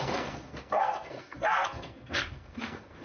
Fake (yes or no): yes